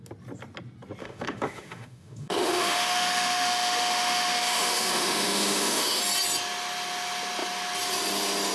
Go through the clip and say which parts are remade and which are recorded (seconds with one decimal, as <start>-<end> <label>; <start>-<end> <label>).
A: 0.0-1.0 recorded; 1.0-6.0 remade; 6.0-8.5 recorded